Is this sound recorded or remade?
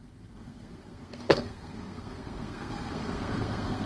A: remade